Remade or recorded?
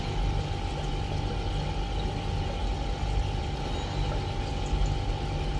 recorded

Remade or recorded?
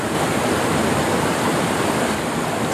recorded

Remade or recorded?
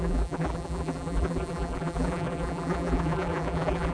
remade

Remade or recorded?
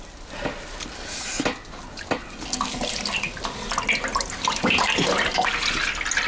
recorded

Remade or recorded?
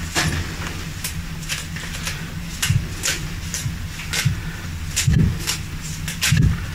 recorded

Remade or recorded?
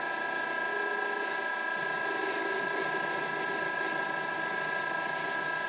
recorded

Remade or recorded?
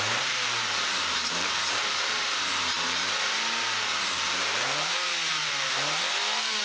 remade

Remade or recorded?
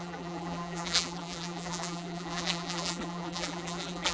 remade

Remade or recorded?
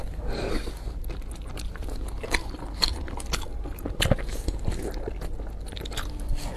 recorded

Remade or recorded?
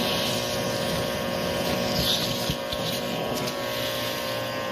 recorded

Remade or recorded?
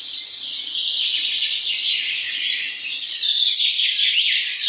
remade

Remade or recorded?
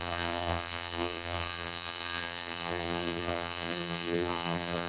remade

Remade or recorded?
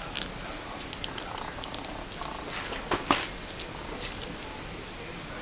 recorded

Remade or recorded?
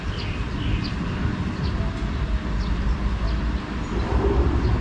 recorded